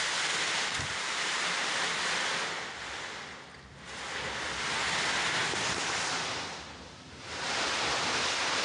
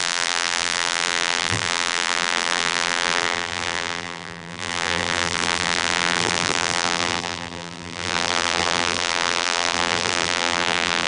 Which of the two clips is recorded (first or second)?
first